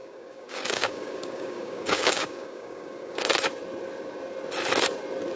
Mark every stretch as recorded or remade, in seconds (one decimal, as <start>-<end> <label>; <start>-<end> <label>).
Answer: 0.0-3.2 remade; 3.2-5.4 recorded